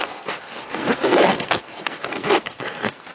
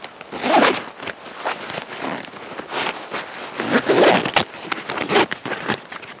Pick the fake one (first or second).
first